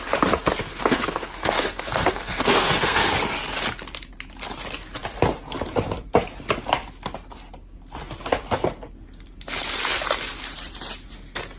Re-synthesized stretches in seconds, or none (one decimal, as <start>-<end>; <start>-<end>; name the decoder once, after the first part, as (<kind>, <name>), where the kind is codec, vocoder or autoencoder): 0.6-3.1 (codec, SNAC)

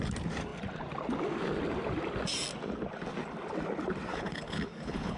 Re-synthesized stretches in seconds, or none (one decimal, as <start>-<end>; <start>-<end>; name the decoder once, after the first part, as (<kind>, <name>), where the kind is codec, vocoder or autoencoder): 4.1-5.2 (codec, HILCodec)

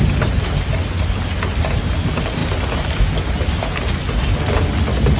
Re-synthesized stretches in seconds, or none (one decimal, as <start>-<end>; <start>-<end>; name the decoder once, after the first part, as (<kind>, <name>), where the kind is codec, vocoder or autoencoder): none

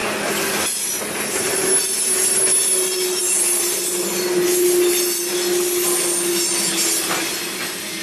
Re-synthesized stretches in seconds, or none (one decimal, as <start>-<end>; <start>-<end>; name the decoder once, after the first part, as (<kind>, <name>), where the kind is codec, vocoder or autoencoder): none

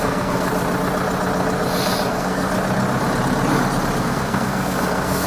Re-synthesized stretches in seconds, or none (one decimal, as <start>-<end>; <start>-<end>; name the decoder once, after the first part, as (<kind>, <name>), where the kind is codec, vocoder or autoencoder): 0.0-0.5 (codec, SNAC); 2.1-2.5; 4.0-5.3

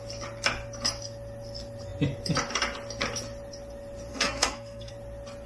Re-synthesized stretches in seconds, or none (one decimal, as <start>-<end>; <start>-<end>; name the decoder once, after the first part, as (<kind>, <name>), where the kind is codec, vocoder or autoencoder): 4.1-4.9 (codec, SNAC)